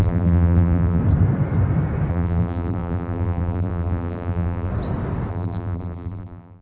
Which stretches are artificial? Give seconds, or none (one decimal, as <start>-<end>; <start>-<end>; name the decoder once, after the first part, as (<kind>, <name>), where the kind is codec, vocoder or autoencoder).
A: 0.0-1.0 (vocoder, BigVGAN v2); 2.1-4.7; 5.3-6.6